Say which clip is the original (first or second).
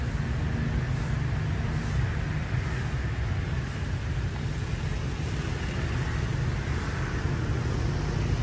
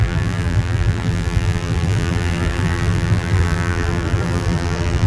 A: first